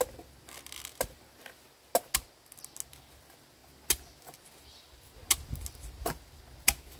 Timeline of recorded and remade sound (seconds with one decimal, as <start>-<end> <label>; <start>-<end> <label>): 0.0-7.0 recorded